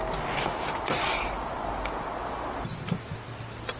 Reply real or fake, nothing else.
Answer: real